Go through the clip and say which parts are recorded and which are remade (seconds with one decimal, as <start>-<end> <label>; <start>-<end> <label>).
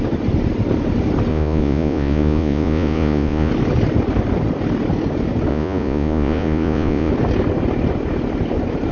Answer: 0.0-1.3 recorded; 1.3-3.5 remade; 3.5-5.5 recorded; 5.5-7.1 remade; 7.1-8.9 recorded